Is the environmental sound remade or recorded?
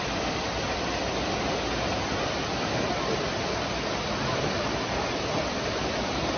remade